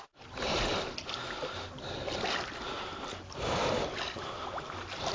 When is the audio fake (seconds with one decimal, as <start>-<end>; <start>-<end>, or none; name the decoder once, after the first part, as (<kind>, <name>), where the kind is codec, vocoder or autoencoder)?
none